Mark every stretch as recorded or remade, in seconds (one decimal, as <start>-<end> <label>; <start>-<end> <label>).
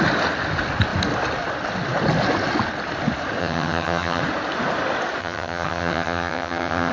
0.0-3.4 recorded; 3.4-4.2 remade; 4.2-5.2 recorded; 5.2-6.9 remade